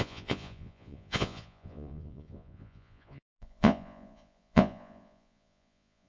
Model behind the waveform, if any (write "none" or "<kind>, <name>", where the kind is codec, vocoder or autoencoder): vocoder, Vocos